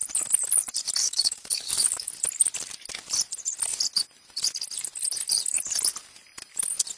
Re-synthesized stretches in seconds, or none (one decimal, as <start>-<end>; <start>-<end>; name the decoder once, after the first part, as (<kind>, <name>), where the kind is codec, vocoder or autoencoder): 1.0-2.1 (autoencoder, DAC-VAE)